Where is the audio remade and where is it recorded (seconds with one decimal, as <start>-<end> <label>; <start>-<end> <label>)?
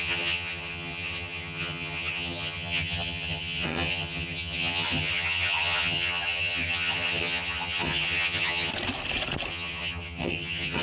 0.0-8.7 remade; 8.7-9.5 recorded; 9.5-10.8 remade